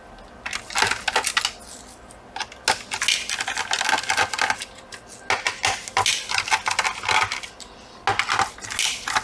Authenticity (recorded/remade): recorded